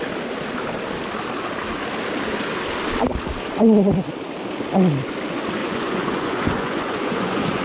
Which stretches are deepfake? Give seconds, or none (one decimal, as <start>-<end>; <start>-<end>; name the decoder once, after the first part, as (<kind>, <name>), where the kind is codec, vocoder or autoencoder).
5.6-7.6 (vocoder, Vocos)